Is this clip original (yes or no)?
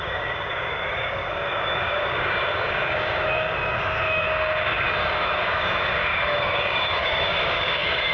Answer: no